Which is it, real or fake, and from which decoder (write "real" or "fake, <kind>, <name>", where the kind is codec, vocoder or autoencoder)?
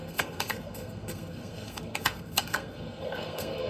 fake, codec, SNAC